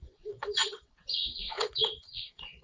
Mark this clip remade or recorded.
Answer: remade